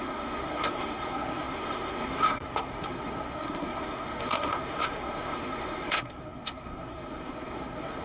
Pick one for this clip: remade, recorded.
remade